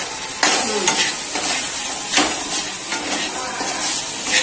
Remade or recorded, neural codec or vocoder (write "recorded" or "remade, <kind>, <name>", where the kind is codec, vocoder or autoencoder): recorded